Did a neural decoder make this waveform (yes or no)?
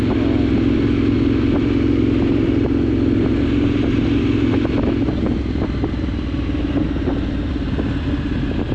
no